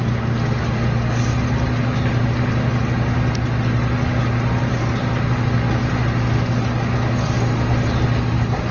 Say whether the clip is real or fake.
real